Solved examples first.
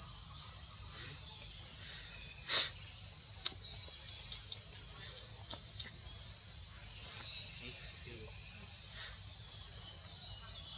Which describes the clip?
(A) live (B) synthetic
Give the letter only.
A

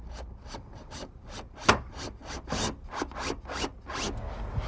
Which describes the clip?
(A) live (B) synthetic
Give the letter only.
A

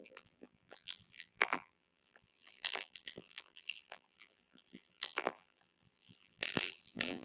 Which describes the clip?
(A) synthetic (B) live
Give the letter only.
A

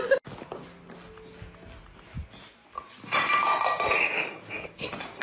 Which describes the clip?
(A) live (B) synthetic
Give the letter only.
A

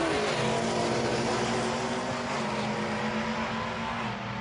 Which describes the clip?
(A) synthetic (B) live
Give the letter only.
B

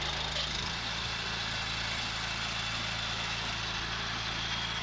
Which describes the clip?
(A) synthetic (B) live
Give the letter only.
B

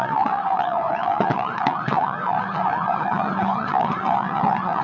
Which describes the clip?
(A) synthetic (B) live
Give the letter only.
A